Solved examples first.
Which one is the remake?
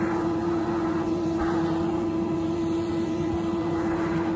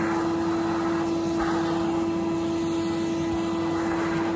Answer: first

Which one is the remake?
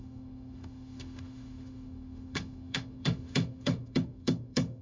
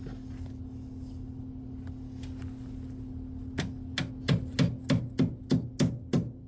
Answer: first